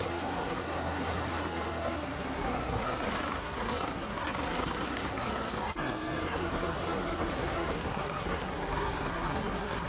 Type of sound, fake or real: fake